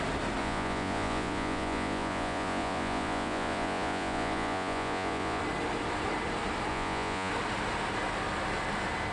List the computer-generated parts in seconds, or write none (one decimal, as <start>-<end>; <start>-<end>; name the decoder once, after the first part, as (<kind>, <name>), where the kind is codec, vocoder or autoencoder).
0.4-5.4 (vocoder, Vocos); 6.7-7.3